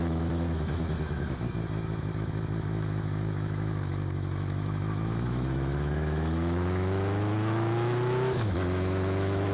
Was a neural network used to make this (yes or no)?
yes